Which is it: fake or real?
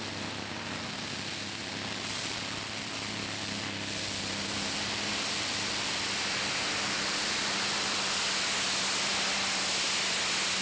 real